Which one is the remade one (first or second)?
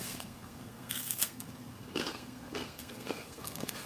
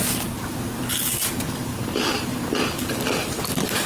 first